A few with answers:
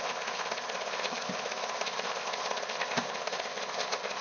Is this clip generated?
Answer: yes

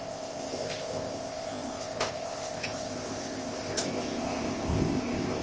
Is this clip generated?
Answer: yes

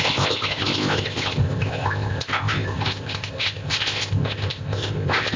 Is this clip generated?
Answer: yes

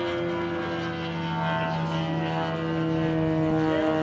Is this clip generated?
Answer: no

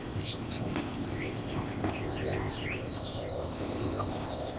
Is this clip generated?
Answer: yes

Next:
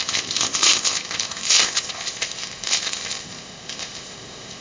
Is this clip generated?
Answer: yes